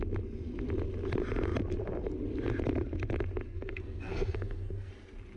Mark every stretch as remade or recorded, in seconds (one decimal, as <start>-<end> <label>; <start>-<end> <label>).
0.0-3.5 recorded; 3.5-4.9 remade; 4.9-5.4 recorded